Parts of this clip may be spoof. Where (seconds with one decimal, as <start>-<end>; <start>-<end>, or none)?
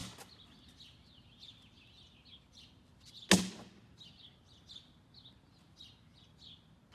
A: none